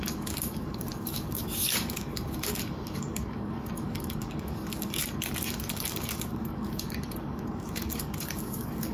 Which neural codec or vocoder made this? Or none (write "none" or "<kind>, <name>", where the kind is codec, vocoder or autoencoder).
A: codec, DAC